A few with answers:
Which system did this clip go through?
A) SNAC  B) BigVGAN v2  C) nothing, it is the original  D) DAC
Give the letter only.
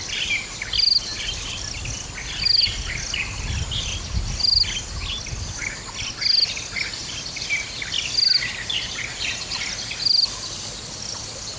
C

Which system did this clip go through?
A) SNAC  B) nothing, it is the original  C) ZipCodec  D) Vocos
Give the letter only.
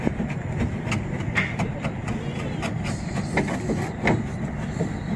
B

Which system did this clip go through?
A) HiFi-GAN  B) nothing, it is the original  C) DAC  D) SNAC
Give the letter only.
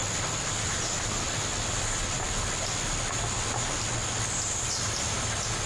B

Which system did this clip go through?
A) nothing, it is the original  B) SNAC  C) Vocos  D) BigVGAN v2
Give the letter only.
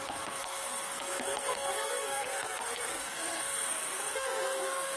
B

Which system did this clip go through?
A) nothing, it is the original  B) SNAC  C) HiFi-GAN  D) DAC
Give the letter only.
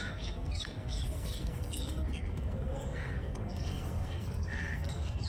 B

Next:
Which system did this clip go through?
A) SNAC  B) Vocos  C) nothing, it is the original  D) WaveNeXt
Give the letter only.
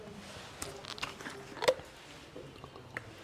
C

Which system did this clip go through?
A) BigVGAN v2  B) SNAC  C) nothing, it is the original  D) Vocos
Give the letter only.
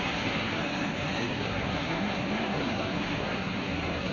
B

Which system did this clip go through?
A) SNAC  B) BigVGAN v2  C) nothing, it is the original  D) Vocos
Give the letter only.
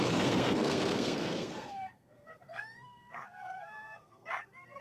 A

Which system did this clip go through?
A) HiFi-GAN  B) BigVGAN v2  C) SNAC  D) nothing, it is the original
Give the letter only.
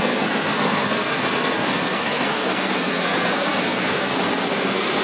C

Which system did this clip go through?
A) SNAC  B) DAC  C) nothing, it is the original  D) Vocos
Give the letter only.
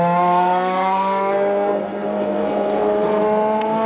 A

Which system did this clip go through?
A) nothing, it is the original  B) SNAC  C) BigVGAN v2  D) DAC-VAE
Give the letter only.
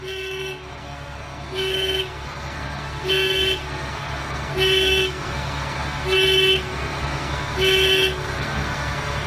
B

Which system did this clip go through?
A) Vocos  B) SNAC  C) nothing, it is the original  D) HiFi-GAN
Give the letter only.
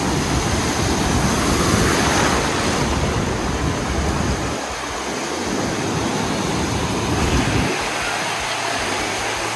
C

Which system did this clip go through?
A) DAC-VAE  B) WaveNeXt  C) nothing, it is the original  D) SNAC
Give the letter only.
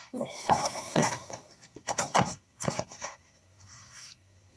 D